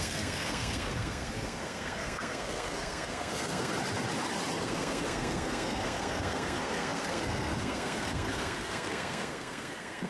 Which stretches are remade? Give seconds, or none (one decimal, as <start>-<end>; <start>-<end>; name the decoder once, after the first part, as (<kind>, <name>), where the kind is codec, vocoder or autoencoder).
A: 0.0-3.7 (codec, SNAC); 4.6-10.1